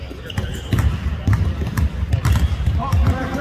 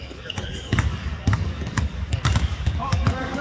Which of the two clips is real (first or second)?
first